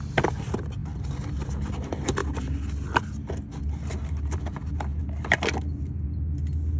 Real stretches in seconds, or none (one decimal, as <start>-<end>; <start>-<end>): 0.0-6.8